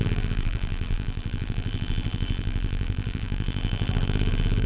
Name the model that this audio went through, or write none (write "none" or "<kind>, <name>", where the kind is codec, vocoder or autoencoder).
vocoder, BigVGAN v2